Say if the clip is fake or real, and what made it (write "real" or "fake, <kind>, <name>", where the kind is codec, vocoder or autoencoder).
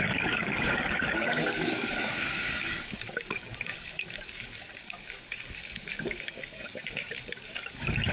fake, codec, DAC